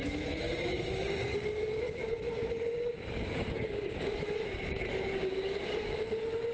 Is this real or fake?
fake